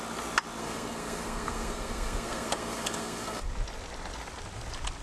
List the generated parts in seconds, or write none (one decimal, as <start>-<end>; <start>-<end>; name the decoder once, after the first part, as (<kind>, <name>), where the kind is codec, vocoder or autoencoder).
0.6-3.5 (codec, SNAC)